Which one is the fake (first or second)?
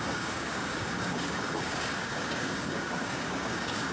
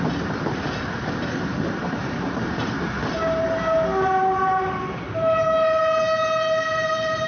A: first